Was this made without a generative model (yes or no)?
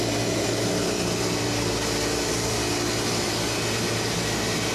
yes